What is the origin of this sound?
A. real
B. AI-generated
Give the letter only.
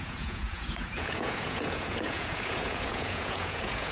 B